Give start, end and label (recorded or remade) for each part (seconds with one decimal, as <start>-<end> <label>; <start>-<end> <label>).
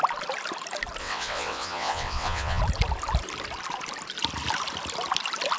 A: 0.0-1.0 recorded; 1.0-2.6 remade; 2.6-5.6 recorded